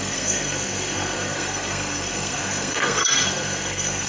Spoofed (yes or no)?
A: yes